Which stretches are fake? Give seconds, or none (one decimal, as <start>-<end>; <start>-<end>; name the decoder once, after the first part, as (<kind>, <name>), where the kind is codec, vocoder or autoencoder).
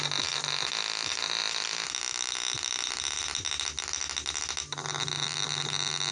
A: none